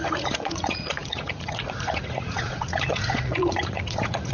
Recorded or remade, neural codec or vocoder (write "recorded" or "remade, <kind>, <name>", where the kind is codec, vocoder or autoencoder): remade, vocoder, Vocos